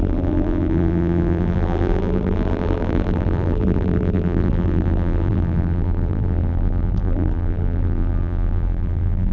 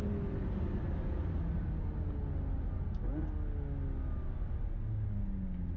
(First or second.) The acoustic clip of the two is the second